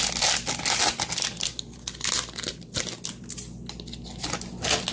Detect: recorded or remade recorded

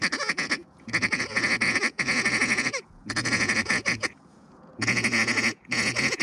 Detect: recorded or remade remade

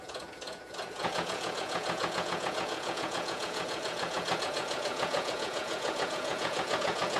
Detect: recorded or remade remade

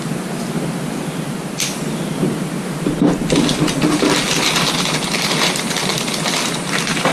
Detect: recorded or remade recorded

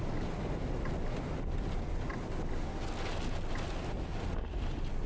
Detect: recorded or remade recorded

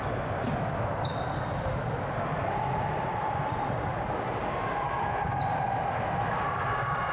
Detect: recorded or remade recorded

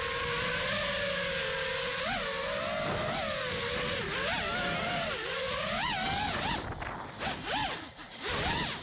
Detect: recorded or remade recorded